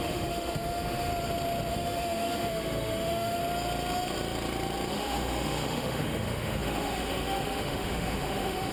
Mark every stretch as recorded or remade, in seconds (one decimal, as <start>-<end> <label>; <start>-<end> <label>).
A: 0.0-1.1 remade; 1.1-1.7 recorded; 1.7-3.4 remade; 3.4-4.9 recorded; 4.9-8.7 remade